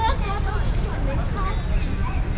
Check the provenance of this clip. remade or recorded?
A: recorded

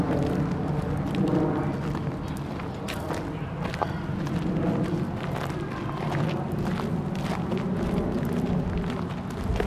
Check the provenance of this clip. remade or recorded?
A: recorded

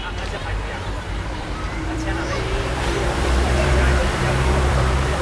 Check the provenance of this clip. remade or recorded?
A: remade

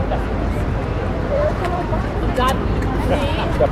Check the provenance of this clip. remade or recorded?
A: remade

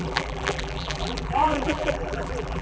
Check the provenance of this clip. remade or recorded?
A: remade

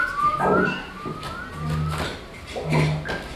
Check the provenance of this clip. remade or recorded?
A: recorded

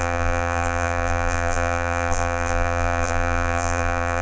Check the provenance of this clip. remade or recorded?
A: remade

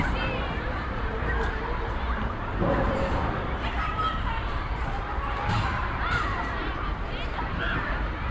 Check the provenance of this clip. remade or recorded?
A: remade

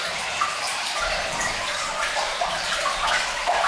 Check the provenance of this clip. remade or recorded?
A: remade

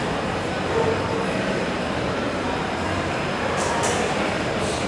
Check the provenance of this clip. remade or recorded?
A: remade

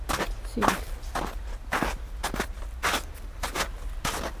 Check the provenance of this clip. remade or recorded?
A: recorded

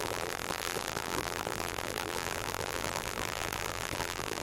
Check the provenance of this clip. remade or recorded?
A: remade